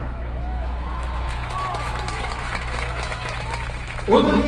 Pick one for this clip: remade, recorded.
remade